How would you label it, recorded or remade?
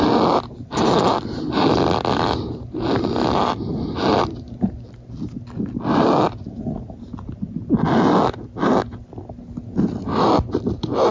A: recorded